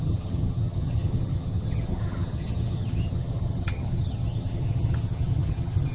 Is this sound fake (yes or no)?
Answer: yes